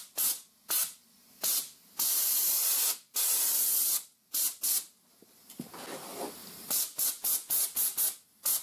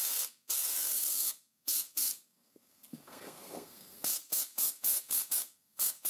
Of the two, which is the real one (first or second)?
first